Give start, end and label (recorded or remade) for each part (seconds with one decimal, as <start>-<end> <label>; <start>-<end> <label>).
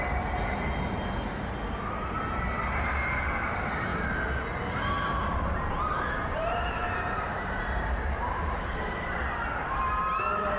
0.0-6.2 recorded; 6.2-9.8 remade; 9.8-10.6 recorded